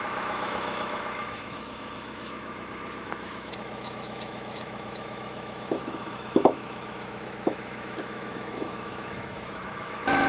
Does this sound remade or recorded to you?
remade